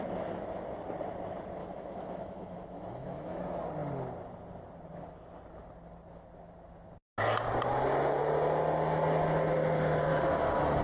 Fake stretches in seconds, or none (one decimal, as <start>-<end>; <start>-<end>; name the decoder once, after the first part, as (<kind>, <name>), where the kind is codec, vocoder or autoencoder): 1.6-3.4 (autoencoder, DAC-VAE); 10.1-10.8